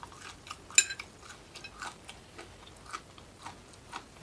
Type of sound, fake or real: real